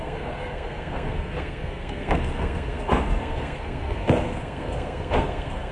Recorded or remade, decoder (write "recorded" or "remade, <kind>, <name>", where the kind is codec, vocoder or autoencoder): remade, codec, SNAC